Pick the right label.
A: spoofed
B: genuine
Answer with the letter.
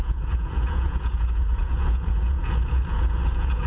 A